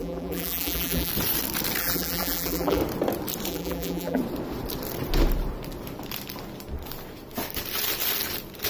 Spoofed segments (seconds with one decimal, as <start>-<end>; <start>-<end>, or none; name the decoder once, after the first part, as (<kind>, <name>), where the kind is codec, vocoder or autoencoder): 0.0-1.1 (vocoder, BigVGAN v2); 1.8-2.8; 3.5-4.2